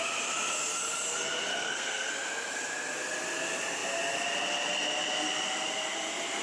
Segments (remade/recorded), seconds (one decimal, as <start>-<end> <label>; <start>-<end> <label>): 0.0-1.5 recorded; 1.5-2.1 remade; 2.1-6.4 recorded